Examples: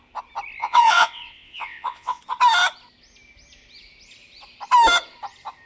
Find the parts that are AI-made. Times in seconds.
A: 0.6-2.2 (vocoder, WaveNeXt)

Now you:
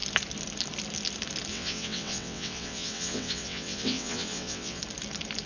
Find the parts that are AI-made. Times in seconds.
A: 1.5-4.8 (vocoder, WaveNeXt)

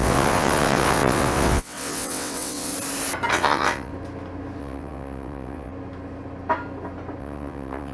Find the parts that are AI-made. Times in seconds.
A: 0.0-2.7 (vocoder, WaveNeXt); 3.3-3.9; 4.6-5.7; 7.2-7.9

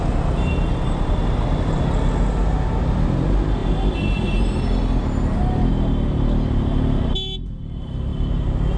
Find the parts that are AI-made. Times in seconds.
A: none

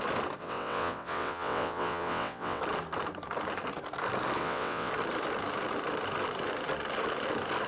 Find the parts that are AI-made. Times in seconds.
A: 0.4-2.6 (vocoder, WaveNeXt); 4.4-4.9

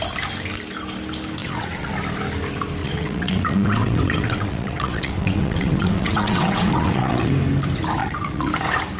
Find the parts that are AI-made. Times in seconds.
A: 1.4-1.9 (vocoder, WaveNeXt); 2.8-7.3; 8.0-8.5

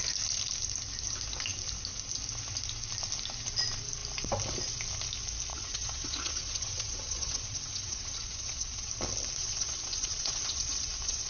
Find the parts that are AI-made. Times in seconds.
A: 5.5-8.9 (vocoder, WaveNeXt); 9.4-11.3

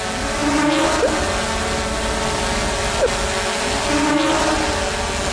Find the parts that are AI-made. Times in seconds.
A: none